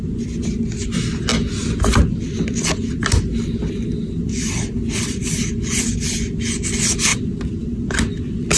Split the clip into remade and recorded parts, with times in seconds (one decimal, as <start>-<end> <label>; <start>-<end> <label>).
0.0-1.3 recorded; 1.3-5.5 remade; 5.5-7.1 recorded; 7.1-8.2 remade; 8.2-8.6 recorded